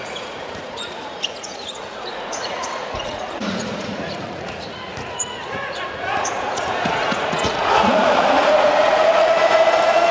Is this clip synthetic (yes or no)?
yes